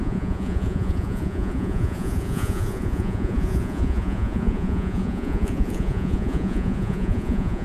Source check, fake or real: fake